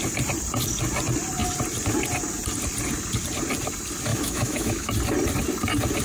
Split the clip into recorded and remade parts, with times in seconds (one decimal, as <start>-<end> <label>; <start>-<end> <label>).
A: 0.0-4.1 recorded; 4.1-4.9 remade; 4.9-6.0 recorded

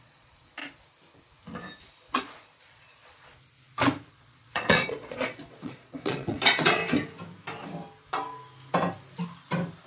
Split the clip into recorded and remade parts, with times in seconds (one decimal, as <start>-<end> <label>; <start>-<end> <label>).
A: 0.0-0.6 remade; 0.6-1.8 recorded; 1.8-3.3 remade; 3.3-4.1 recorded; 4.1-6.8 remade; 6.8-9.9 recorded

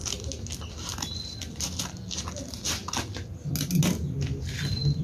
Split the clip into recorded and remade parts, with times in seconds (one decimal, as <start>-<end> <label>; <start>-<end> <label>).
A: 0.0-5.0 recorded

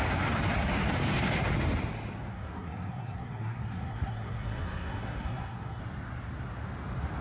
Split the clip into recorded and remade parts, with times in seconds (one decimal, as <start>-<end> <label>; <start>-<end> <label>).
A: 0.0-2.3 recorded; 2.3-5.8 remade; 5.8-7.2 recorded

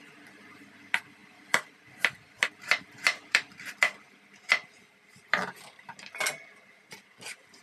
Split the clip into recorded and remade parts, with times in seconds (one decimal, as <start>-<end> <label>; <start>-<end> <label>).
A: 0.0-1.2 recorded; 1.2-5.8 remade; 5.8-7.6 recorded

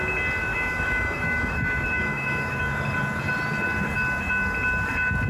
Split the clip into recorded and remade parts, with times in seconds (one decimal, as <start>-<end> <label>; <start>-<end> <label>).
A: 0.0-0.5 recorded; 0.5-2.6 remade; 2.6-5.3 recorded

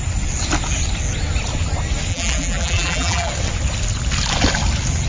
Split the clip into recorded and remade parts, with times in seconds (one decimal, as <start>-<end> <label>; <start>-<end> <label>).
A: 0.0-2.1 recorded; 2.1-3.3 remade; 3.3-5.1 recorded